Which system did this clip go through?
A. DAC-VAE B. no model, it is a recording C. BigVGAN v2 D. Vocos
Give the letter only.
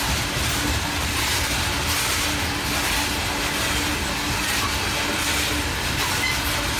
B